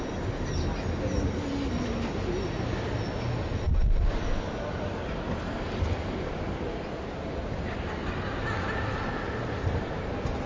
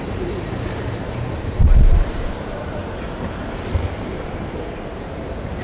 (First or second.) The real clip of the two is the first